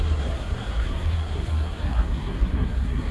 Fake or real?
fake